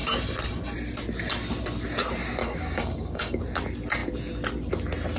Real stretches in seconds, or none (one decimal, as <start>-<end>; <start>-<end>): 0.0-2.4; 3.4-5.2